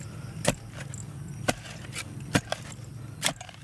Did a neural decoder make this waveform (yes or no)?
no